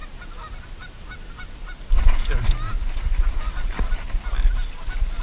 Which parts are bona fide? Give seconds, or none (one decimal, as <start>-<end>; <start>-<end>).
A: 0.0-5.2